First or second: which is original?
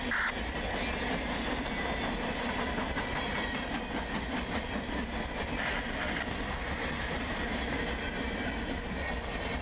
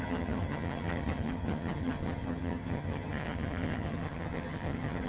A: first